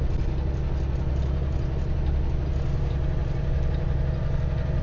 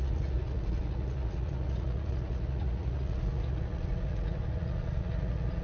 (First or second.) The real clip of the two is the first